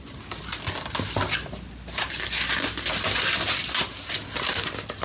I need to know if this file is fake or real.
real